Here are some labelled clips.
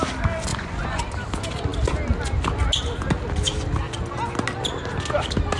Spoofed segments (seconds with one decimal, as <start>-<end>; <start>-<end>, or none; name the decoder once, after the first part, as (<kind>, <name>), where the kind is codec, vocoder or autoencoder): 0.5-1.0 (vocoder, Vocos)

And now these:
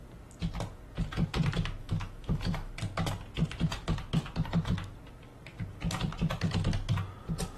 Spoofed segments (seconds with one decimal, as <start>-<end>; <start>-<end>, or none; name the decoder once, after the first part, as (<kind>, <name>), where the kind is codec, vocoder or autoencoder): 1.8-2.7 (autoencoder, DAC-VAE)

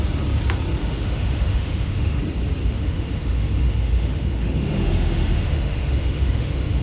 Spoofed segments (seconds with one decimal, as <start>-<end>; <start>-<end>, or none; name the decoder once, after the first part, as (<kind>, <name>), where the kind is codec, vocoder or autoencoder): 0.8-2.2 (autoencoder, DAC-VAE); 2.6-6.8